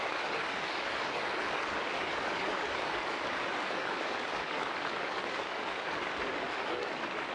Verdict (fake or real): fake